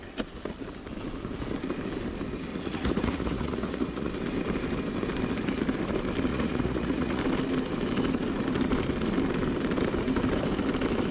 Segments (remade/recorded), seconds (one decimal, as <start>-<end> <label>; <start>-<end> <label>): 0.0-2.5 recorded; 2.5-4.1 remade; 4.1-6.3 recorded; 6.3-7.2 remade; 7.2-11.1 recorded